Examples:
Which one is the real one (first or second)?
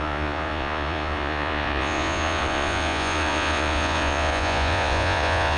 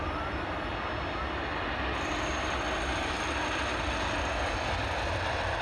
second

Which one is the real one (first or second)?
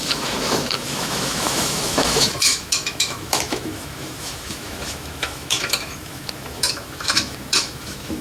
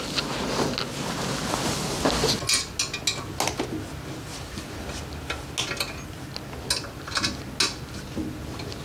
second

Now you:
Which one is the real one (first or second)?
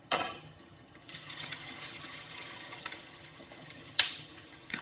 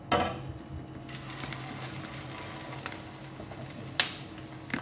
second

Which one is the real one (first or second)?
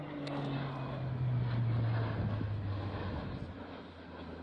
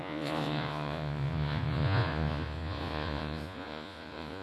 first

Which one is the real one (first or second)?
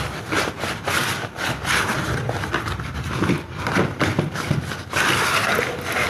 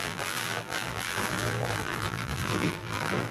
first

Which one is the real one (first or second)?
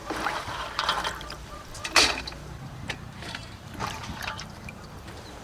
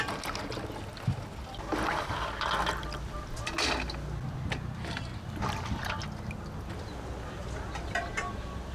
second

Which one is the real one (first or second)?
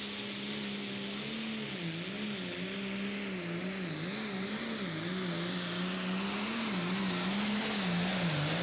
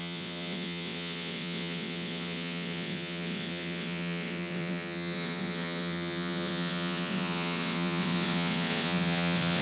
first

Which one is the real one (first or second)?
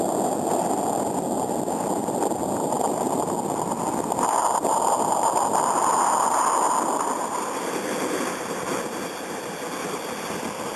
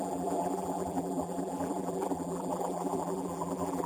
first